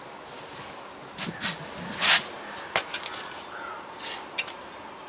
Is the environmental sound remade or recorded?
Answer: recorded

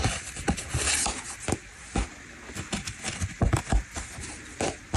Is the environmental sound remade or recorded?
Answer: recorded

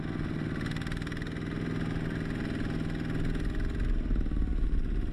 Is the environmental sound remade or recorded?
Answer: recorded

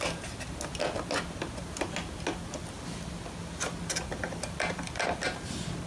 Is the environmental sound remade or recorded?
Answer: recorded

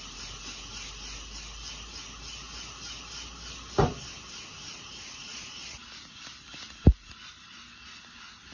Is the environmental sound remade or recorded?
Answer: recorded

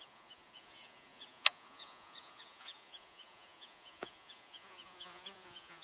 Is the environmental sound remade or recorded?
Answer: remade